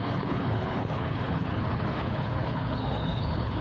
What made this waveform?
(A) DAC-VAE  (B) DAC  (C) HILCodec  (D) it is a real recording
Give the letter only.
C